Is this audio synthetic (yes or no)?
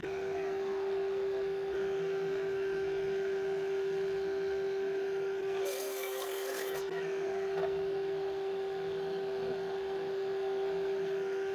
yes